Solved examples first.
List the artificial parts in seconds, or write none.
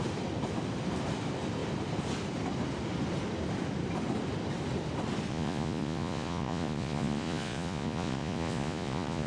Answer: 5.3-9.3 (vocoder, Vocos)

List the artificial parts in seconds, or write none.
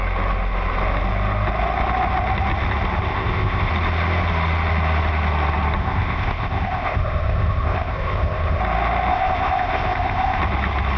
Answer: 3.1-3.7 (codec, ZipCodec); 5.8-8.6; 9.1-10.4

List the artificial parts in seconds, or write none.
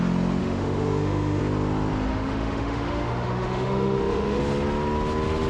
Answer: 0.4-1.4 (autoencoder, DAC-VAE); 2.1-4.4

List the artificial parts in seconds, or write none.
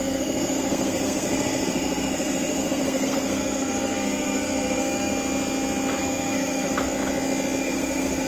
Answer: 0.0-5.1 (codec, SNAC); 6.0-6.7; 7.6-8.3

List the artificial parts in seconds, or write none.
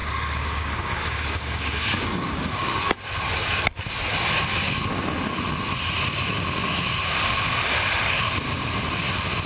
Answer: 0.0-2.8 (codec, DAC)